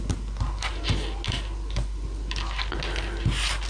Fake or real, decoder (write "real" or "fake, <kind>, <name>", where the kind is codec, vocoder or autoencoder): real